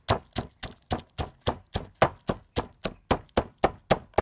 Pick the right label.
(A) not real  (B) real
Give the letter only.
B